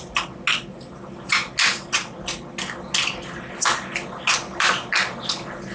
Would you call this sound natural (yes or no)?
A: yes